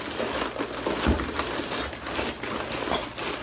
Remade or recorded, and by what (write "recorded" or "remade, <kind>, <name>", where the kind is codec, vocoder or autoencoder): recorded